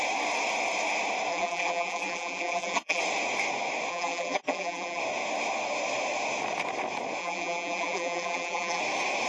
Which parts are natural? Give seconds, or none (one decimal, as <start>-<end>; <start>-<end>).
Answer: 0.0-1.3; 3.0-3.9; 5.0-7.2; 8.8-9.3